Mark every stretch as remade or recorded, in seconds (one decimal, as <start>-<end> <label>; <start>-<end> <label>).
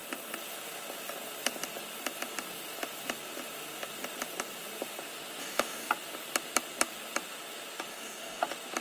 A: 0.0-5.4 recorded; 5.4-5.9 remade; 5.9-7.9 recorded; 7.9-8.4 remade; 8.4-8.8 recorded